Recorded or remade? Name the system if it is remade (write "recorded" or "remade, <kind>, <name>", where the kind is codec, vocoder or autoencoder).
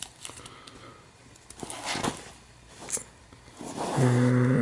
recorded